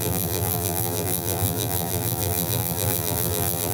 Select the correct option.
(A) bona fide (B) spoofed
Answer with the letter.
B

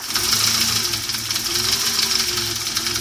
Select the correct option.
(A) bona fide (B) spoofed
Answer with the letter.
A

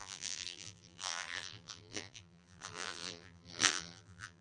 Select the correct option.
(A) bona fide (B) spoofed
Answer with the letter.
B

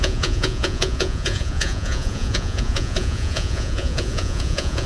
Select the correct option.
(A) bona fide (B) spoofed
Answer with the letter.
B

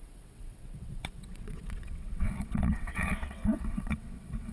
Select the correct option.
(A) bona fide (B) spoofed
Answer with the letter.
B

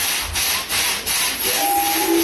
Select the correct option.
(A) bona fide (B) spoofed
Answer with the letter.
A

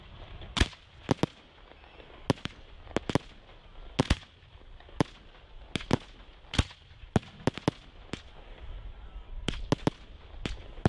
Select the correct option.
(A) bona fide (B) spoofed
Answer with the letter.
A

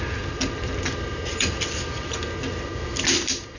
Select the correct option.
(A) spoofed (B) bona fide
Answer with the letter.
B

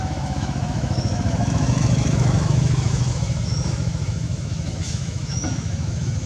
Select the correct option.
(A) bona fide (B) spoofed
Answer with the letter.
B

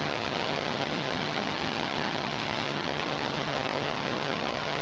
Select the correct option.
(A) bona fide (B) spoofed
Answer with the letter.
B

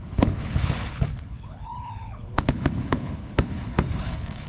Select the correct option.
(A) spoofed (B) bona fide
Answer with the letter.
A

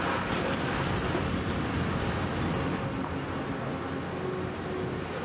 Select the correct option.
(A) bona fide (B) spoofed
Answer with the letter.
A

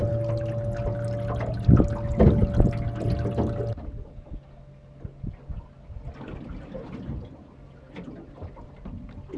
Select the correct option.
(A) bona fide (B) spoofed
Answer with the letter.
A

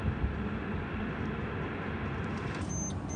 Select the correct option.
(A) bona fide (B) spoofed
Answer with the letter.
A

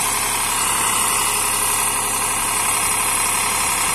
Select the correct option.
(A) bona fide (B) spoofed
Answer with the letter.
A